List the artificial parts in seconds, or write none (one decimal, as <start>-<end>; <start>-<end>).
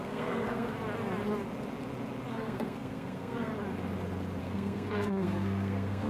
0.0-0.7; 2.3-3.5; 4.4-6.1